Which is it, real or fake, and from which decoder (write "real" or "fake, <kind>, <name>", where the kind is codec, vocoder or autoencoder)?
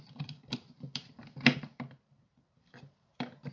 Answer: fake, vocoder, BigVGAN v2